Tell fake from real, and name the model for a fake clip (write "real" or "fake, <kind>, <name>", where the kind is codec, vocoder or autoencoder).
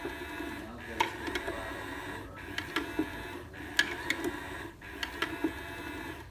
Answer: real